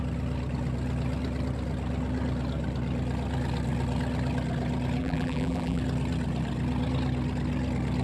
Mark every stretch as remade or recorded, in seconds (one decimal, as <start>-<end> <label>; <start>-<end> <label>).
0.0-5.0 recorded; 5.0-5.8 remade; 5.8-8.0 recorded